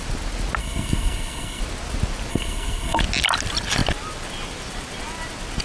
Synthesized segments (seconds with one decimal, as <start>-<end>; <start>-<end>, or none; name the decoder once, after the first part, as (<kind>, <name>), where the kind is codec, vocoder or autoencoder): 0.6-1.6 (codec, SNAC); 2.3-3.0